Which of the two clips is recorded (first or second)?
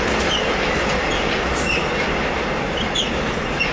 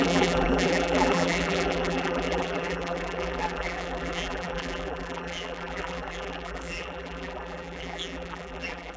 first